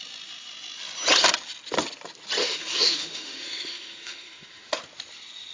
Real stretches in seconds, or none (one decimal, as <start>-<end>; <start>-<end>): 0.0-2.4; 4.7-5.5